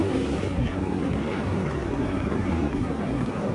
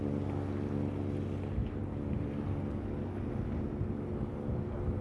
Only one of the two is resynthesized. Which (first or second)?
first